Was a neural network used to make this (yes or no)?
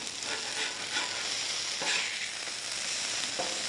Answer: no